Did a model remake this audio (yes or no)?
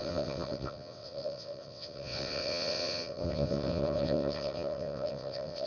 yes